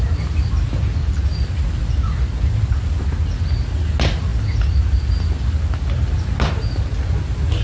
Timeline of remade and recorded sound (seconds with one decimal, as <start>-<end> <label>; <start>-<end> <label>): 0.0-7.6 recorded